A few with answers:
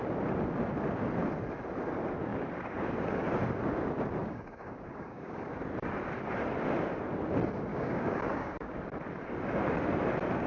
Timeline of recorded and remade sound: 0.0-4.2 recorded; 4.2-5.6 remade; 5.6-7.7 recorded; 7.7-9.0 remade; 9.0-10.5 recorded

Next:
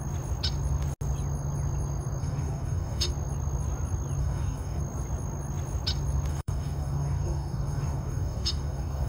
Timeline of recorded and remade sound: 0.0-2.2 recorded; 2.2-3.1 remade; 3.1-4.2 recorded; 4.2-4.8 remade; 4.8-6.3 recorded; 6.3-9.1 remade

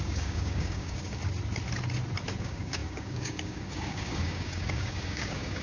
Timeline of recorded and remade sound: 0.0-1.2 remade; 1.2-2.4 recorded; 2.4-5.6 remade